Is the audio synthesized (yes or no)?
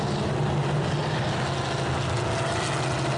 no